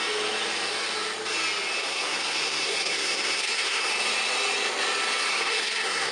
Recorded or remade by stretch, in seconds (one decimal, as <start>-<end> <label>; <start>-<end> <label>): 0.0-1.8 recorded; 1.8-3.9 remade; 3.9-5.3 recorded; 5.3-6.1 remade